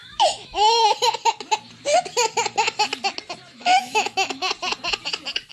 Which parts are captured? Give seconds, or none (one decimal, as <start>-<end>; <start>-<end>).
0.9-3.5; 4.5-5.5